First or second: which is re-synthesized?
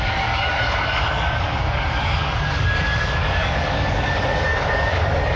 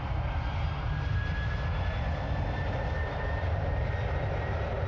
first